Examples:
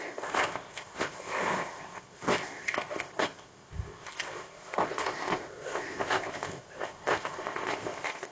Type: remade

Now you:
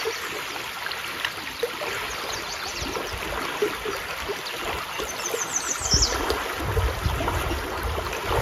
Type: recorded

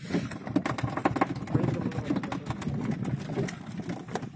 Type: recorded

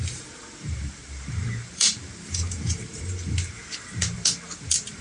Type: remade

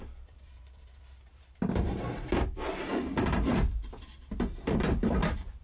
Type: remade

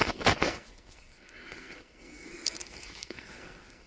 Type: remade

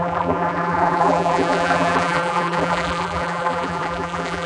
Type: remade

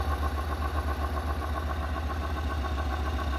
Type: recorded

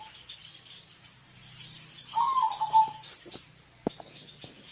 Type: recorded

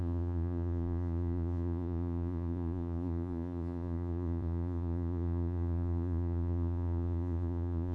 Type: remade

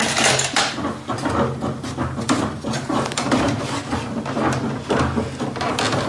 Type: recorded